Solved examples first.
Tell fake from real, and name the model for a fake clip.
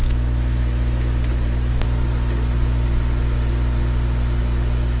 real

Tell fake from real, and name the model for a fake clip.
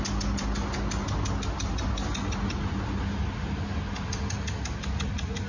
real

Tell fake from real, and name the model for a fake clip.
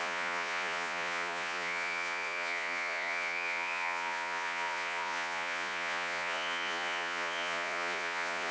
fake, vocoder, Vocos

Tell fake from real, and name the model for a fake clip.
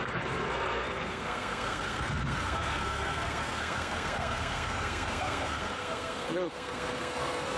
fake, codec, SNAC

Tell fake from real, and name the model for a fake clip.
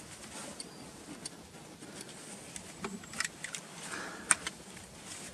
real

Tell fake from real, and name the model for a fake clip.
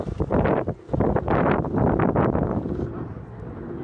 real